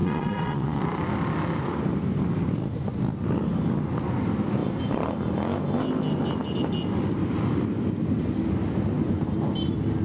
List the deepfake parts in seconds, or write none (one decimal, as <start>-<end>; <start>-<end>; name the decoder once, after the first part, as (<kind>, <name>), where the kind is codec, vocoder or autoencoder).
0.0-0.8 (vocoder, WaveNeXt)